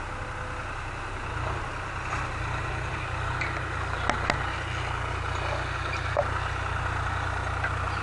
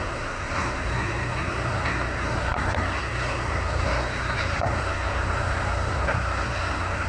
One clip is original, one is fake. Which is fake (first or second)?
second